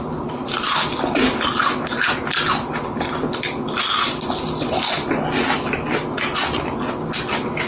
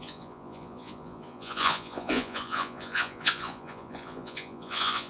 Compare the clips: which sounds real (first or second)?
first